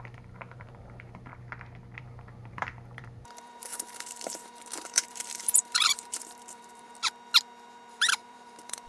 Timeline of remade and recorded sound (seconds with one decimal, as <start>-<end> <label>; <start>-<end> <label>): 0.0-1.3 remade; 1.3-2.0 recorded; 2.0-6.9 remade; 6.9-7.9 recorded; 7.9-8.9 remade

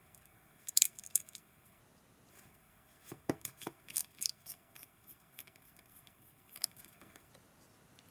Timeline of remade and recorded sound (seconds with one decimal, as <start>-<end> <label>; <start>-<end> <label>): 0.0-1.8 remade; 1.8-2.3 recorded; 2.3-7.3 remade; 7.3-8.1 recorded

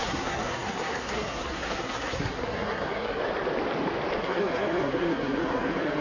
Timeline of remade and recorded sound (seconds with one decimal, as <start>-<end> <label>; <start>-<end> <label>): 0.0-3.2 remade; 3.2-4.2 recorded; 4.2-6.0 remade

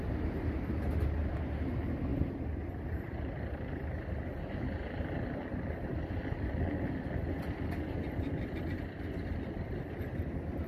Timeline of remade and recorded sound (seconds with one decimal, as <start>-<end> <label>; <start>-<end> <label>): 0.0-2.1 recorded; 2.1-4.1 remade; 4.1-10.7 recorded

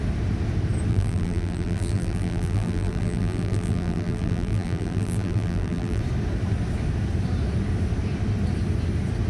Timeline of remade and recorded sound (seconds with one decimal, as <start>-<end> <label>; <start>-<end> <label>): 0.0-0.9 recorded; 0.9-6.0 remade; 6.0-9.3 recorded

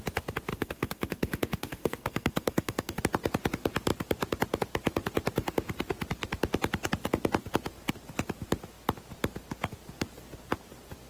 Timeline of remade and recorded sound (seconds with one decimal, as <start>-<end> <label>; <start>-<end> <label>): 0.0-0.5 recorded; 0.5-3.0 remade; 3.0-11.1 recorded

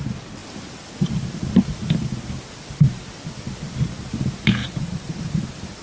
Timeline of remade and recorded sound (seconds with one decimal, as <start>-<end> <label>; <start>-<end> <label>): 0.0-4.6 recorded; 4.6-5.2 remade; 5.2-5.8 recorded

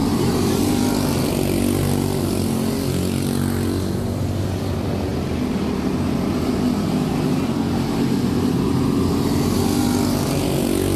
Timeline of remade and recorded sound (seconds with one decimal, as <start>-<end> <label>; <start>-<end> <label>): 0.0-0.6 remade; 0.6-11.0 recorded